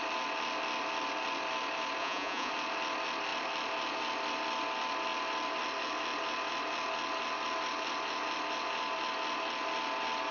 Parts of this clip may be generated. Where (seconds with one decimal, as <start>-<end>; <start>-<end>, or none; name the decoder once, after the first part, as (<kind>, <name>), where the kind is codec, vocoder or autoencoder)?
2.0-2.5 (vocoder, Vocos)